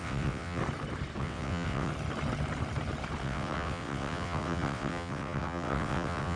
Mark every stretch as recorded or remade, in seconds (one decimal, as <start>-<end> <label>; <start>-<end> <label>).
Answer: 0.0-0.6 remade; 0.6-1.2 recorded; 1.2-1.9 remade; 1.9-3.2 recorded; 3.2-6.4 remade